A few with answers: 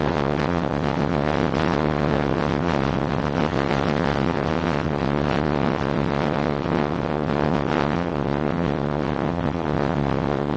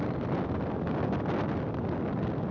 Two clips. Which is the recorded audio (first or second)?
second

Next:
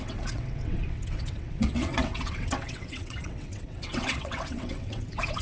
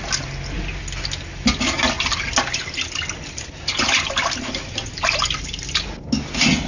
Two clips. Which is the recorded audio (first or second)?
second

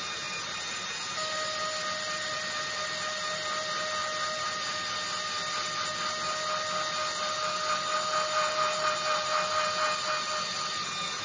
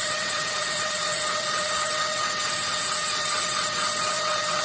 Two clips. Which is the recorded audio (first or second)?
first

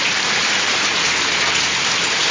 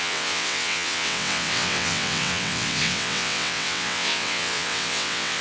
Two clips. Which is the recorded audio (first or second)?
first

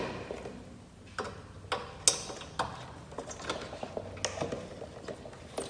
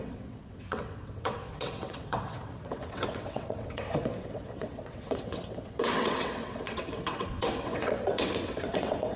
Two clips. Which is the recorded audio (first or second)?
first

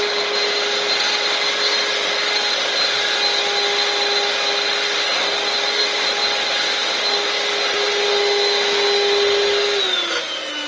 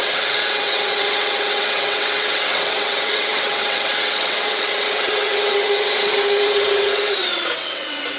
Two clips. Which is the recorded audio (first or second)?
first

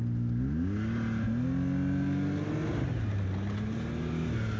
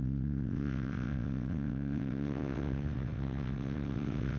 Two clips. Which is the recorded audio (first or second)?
first